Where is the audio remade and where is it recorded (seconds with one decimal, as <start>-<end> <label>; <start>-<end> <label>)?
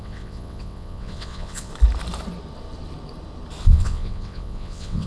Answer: 0.0-1.7 remade; 1.7-3.6 recorded; 3.6-5.1 remade